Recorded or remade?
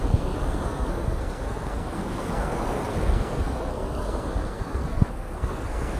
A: remade